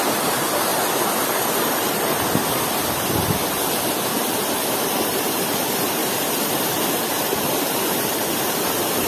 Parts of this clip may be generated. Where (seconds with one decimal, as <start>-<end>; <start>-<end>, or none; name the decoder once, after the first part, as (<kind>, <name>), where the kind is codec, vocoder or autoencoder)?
0.0-0.7 (vocoder, BigVGAN v2); 4.7-6.0; 8.7-9.1